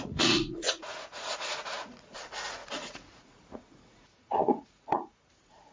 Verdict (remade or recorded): remade